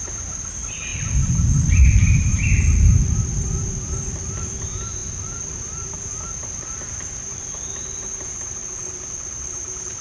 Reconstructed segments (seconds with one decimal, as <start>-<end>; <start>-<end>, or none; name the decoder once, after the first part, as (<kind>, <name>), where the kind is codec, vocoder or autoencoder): 0.0-8.6 (vocoder, BigVGAN v2); 9.1-10.0